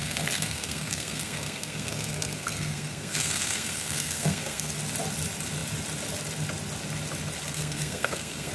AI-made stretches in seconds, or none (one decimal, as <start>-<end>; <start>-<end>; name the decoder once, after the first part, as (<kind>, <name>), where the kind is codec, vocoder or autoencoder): 0.0-4.7 (codec, SNAC); 7.5-8.5